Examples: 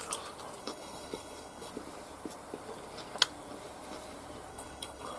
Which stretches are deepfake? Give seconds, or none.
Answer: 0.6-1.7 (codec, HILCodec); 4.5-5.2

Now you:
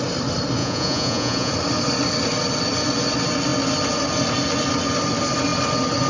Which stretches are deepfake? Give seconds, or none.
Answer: 0.6-1.5 (vocoder, Vocos)

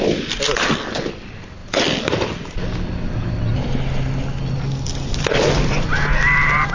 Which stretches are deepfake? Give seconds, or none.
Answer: none

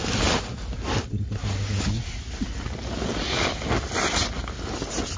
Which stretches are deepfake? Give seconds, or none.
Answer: none

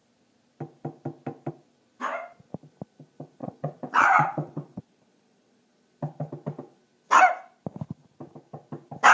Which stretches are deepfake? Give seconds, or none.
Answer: 3.4-5.8 (vocoder, Vocos)

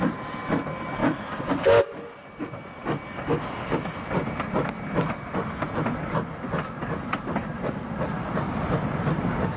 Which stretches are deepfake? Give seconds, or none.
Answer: none

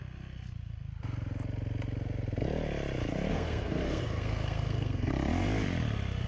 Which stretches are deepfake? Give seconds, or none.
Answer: 3.3-5.1 (codec, SNAC)